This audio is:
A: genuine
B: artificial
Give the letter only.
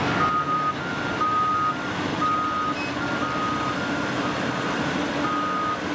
A